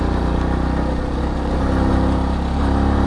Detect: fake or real real